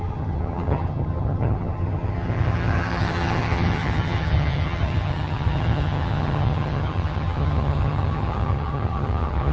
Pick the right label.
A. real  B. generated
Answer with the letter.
B